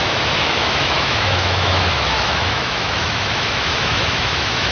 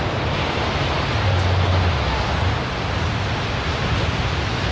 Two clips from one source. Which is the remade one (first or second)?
first